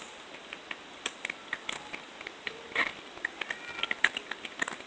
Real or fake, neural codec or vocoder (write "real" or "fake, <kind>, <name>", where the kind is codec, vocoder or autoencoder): real